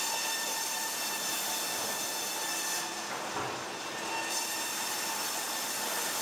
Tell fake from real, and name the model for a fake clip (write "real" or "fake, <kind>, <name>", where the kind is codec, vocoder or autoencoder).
real